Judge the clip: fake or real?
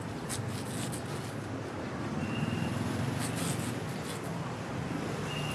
real